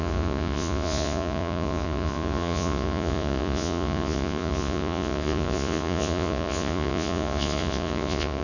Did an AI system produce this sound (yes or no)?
yes